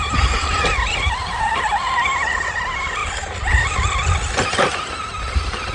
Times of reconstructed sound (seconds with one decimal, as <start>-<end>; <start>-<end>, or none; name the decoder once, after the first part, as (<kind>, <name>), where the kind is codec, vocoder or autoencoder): none